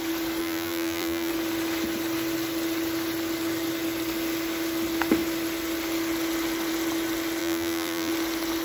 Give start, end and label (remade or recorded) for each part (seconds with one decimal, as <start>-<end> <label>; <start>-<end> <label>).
0.0-0.4 recorded; 0.4-1.3 remade; 1.3-7.4 recorded; 7.4-8.1 remade; 8.1-8.6 recorded